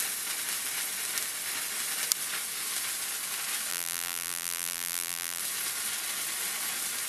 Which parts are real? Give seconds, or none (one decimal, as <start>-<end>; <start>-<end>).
0.0-3.7; 5.4-7.1